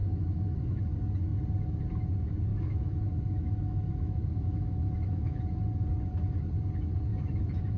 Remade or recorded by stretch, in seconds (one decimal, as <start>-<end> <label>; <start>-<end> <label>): 0.0-0.8 remade; 0.8-2.5 recorded; 2.5-5.4 remade; 5.4-7.1 recorded; 7.1-7.8 remade